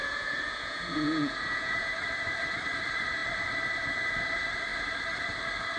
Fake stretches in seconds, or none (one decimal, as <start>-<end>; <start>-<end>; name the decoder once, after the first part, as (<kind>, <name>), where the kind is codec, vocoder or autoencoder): 0.0-1.9 (vocoder, Vocos)